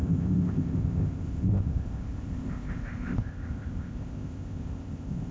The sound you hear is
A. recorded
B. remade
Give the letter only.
B